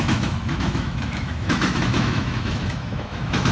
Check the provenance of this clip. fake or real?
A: fake